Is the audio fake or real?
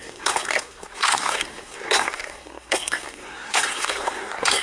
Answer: fake